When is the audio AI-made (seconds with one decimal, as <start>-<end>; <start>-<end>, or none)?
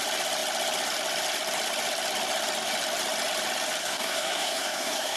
3.8-5.2